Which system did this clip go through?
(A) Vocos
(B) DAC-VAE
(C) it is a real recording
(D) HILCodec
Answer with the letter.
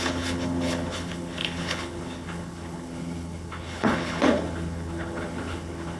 D